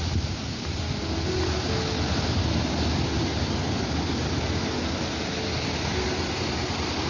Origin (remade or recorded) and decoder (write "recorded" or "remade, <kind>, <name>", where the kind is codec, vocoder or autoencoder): recorded